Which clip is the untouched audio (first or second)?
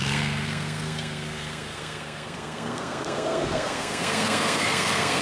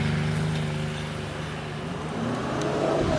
second